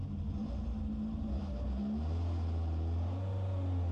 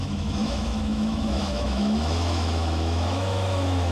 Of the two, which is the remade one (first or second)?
second